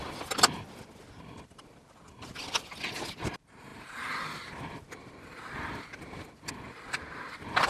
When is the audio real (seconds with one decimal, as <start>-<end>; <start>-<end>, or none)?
0.0-7.7